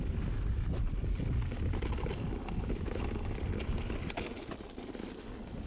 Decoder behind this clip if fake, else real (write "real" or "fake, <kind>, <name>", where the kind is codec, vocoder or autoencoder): real